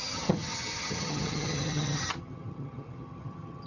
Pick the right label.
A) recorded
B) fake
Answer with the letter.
B